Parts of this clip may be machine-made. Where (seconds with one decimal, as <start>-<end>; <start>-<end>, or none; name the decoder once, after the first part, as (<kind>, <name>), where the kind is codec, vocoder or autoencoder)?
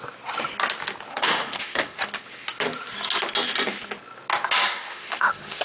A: 1.1-2.0 (autoencoder, DAC-VAE); 4.9-5.6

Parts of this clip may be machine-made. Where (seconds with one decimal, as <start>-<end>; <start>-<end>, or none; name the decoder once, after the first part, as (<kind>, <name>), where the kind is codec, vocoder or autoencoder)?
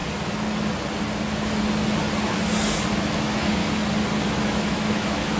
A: 3.2-3.6 (autoencoder, DAC-VAE); 4.2-5.4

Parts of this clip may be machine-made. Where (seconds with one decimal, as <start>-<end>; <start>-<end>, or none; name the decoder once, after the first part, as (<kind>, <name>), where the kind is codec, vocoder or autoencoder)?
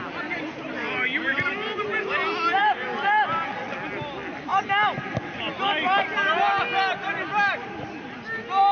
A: none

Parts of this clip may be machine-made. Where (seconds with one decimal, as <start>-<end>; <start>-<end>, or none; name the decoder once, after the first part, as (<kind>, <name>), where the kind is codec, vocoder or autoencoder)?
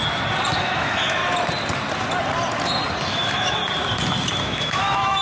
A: 0.6-1.2 (autoencoder, DAC-VAE); 3.1-3.6; 4.4-5.2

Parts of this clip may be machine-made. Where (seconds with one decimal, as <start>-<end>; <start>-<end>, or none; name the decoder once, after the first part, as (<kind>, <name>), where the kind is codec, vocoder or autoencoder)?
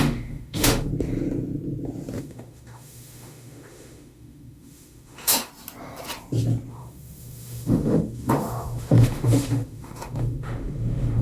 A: 0.0-0.9 (autoencoder, DAC-VAE); 2.2-5.5; 6.7-11.2